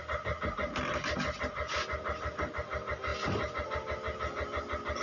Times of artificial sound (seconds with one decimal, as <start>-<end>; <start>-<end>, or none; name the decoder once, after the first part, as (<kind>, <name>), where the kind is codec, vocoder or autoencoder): none